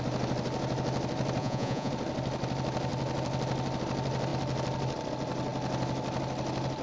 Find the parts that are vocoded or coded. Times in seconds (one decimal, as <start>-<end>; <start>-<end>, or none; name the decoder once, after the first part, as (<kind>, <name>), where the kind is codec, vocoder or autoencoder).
1.4-1.9 (vocoder, Vocos)